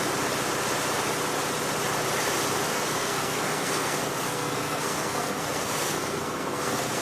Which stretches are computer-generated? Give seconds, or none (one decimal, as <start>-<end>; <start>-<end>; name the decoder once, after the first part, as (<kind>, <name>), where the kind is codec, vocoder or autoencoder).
2.7-7.0 (codec, SNAC)